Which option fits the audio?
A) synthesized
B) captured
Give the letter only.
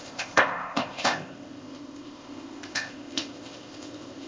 A